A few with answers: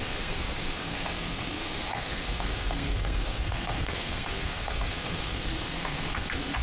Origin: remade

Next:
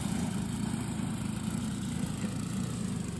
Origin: recorded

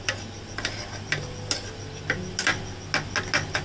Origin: recorded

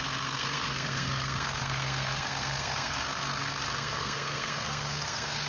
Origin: remade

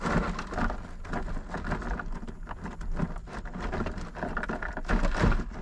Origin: recorded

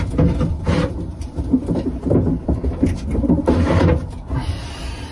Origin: recorded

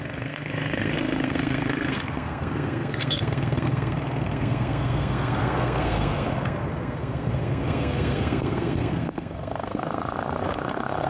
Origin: remade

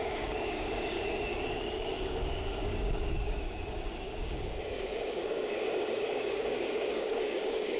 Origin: remade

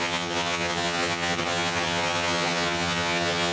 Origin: remade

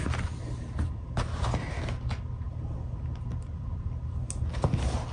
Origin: recorded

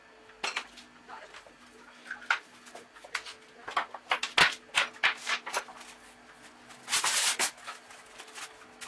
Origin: recorded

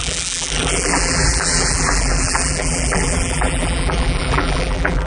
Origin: remade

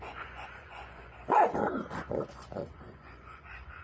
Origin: remade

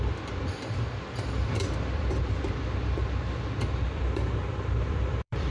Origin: remade